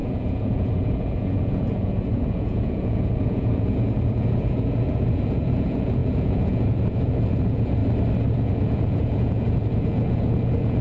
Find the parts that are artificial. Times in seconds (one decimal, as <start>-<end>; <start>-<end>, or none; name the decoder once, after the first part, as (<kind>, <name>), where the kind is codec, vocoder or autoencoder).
0.0-7.8 (vocoder, Vocos); 8.3-10.8